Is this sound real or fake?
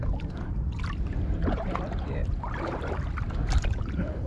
fake